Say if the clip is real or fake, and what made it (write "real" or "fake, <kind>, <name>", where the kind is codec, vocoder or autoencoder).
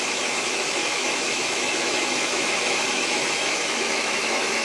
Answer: fake, autoencoder, DAC-VAE